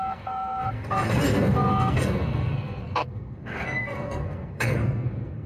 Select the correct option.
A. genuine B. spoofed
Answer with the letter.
B